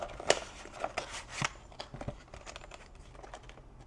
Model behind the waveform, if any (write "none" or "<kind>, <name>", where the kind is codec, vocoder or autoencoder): none